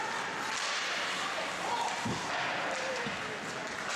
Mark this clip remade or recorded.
recorded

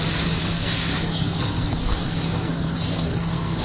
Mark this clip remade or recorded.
remade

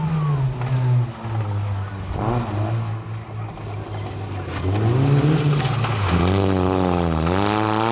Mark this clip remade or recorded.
recorded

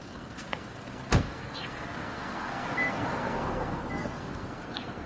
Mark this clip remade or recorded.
remade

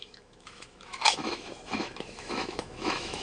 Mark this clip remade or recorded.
remade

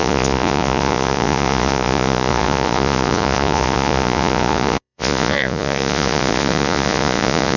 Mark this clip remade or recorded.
remade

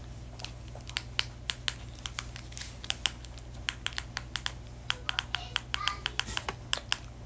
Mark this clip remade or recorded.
recorded